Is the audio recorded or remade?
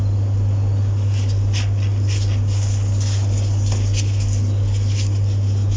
recorded